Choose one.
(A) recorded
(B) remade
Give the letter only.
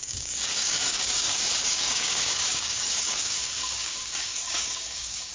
B